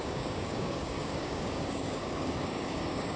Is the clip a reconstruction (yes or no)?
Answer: yes